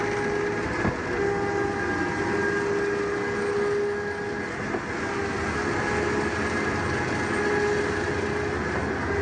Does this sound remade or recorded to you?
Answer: recorded